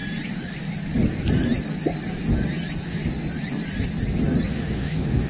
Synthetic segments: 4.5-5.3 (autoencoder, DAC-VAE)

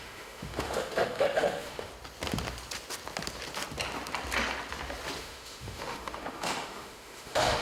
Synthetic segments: 0.0-1.9 (autoencoder, DAC-VAE); 5.2-7.6